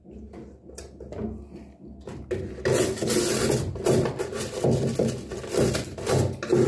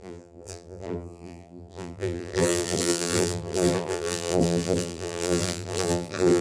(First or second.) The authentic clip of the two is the first